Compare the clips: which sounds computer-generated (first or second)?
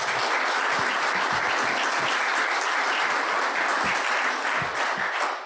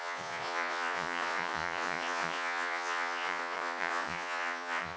second